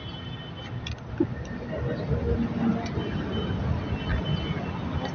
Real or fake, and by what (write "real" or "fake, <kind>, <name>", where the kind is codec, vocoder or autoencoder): real